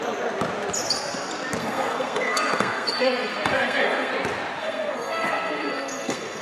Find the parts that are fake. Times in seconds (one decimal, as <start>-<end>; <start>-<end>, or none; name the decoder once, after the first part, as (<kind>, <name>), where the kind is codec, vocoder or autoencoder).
1.6-4.1 (codec, SNAC); 4.6-6.4